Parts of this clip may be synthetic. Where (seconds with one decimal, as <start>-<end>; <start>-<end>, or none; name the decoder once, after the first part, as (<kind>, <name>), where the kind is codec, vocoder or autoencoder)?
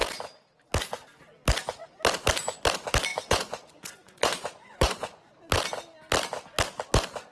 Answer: 3.1-5.3 (vocoder, Vocos)